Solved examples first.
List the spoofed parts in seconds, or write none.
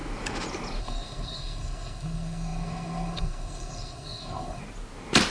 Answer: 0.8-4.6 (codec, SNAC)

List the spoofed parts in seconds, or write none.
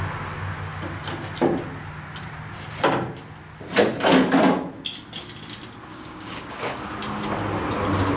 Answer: 5.9-6.9 (codec, DAC)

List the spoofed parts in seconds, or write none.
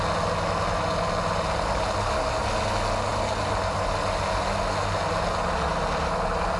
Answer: none